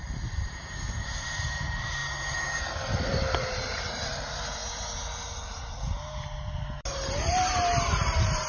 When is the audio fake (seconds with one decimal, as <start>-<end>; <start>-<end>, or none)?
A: 0.0-2.0; 2.6-4.6; 6.9-8.5